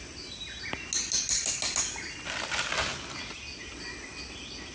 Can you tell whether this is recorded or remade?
recorded